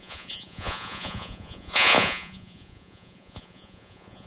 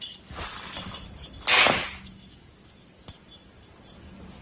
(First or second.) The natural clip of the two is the second